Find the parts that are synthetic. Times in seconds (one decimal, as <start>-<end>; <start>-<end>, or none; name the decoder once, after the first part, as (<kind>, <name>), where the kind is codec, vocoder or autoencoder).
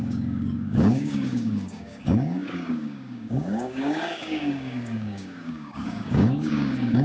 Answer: 0.0-7.0 (codec, DAC)